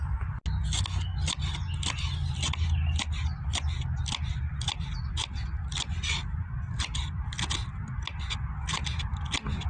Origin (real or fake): real